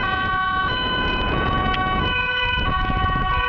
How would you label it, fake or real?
fake